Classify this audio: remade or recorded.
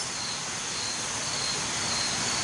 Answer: recorded